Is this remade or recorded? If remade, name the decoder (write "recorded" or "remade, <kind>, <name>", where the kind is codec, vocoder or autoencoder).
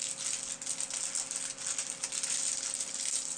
recorded